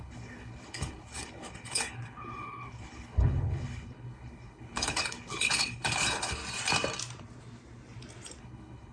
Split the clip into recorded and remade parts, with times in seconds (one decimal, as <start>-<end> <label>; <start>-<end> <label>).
0.0-6.4 remade; 6.4-8.4 recorded; 8.4-8.9 remade